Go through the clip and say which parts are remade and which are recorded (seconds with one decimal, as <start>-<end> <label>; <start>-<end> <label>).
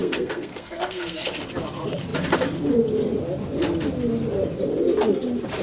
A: 0.0-1.3 remade; 1.3-5.6 recorded